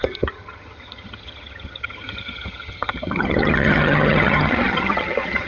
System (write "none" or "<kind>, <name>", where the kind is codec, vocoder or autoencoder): vocoder, HiFi-GAN